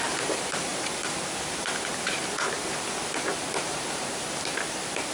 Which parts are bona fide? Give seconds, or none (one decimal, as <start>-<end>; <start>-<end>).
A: 0.0-5.1